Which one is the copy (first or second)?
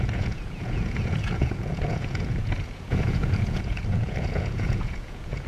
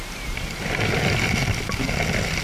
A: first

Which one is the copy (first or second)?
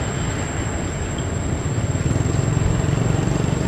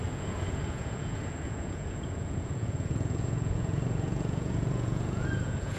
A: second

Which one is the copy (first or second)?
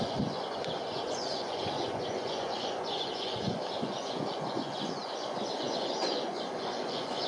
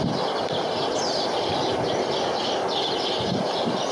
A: first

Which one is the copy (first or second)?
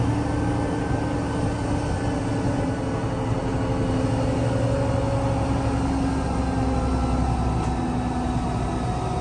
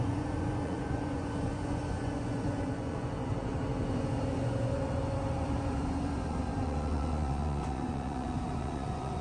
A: second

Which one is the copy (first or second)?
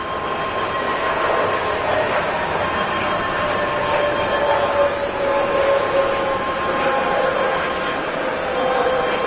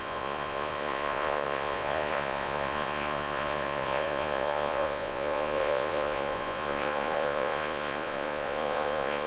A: second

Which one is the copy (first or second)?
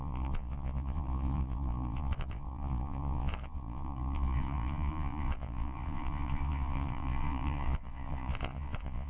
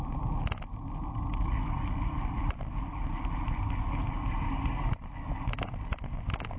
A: first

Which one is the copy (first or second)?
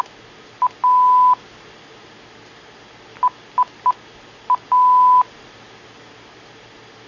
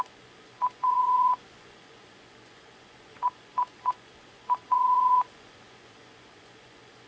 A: second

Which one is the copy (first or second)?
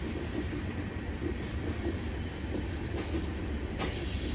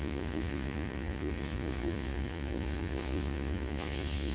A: second